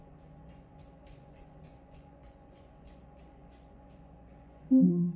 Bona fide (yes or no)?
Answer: no